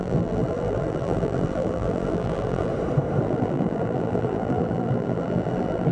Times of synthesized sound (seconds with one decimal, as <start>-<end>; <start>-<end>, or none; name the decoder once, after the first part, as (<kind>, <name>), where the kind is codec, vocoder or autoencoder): 0.0-2.7 (vocoder, BigVGAN v2); 3.2-5.9